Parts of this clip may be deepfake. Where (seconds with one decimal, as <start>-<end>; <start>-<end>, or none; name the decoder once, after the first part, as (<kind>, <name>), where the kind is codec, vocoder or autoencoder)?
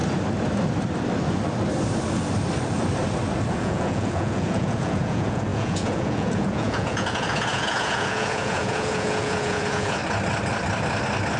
3.5-10.0 (vocoder, Vocos)